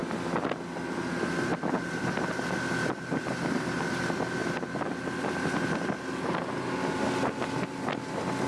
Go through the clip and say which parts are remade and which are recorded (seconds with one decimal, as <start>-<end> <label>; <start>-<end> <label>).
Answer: 0.0-8.5 recorded